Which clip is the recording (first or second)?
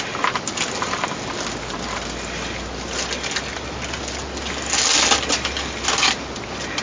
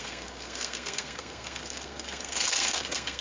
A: first